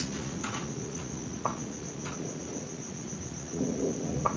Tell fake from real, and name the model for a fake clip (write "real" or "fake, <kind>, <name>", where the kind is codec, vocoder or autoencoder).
fake, vocoder, Vocos